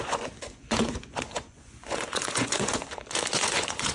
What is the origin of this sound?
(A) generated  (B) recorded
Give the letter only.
A